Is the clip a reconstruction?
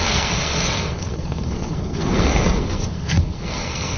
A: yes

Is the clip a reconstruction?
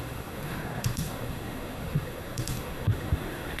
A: yes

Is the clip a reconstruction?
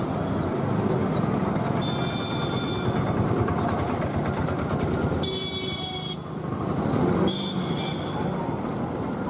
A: no